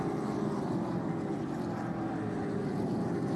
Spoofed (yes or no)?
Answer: no